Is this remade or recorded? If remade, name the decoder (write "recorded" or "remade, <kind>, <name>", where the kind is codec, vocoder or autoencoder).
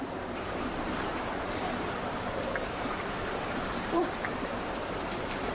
remade, vocoder, BigVGAN v2